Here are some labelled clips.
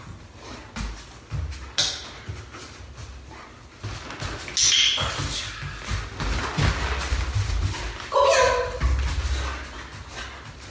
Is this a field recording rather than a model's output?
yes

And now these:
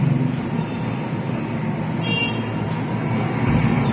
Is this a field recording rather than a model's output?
yes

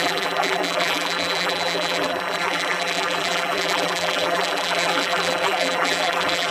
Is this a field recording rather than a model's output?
no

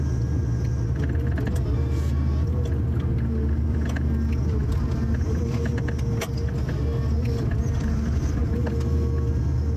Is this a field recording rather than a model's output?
yes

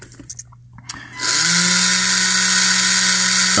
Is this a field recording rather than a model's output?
yes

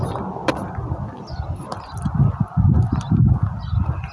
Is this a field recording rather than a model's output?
yes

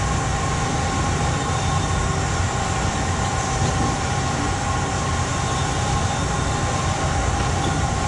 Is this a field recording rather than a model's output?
yes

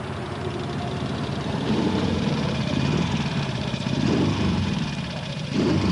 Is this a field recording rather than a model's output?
no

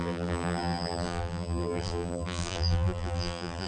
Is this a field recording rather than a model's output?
no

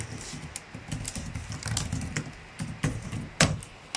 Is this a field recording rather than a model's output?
yes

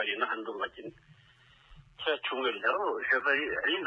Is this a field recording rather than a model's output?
no